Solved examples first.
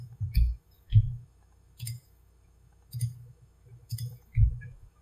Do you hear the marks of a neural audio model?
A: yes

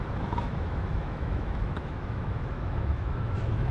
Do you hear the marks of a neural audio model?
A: yes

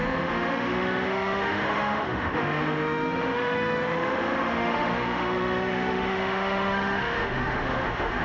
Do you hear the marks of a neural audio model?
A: yes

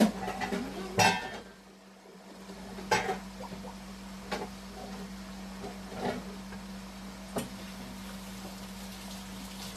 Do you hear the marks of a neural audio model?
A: no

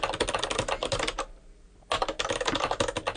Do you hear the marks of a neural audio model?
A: no